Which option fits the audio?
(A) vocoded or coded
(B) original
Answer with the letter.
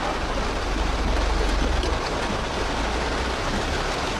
B